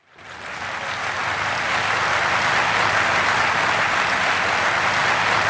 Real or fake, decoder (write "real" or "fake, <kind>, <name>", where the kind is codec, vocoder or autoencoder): real